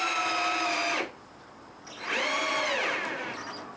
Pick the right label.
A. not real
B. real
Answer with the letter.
B